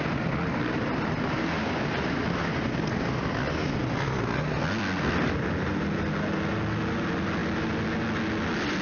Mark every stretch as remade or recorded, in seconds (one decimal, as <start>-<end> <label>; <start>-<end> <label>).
0.0-8.8 recorded